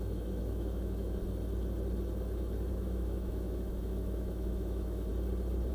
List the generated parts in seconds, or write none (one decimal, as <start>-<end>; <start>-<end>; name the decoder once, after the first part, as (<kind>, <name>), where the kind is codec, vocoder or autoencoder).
0.0-1.2 (autoencoder, DAC-VAE); 2.7-5.1